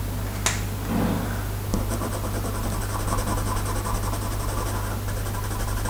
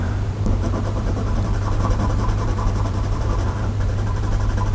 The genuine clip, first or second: first